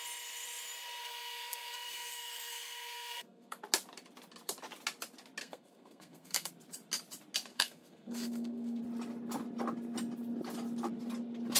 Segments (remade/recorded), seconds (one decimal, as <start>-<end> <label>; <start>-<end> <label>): 0.0-1.0 recorded; 1.0-3.6 remade; 3.6-5.4 recorded; 5.4-6.5 remade; 6.5-7.5 recorded; 7.5-8.8 remade; 8.8-11.6 recorded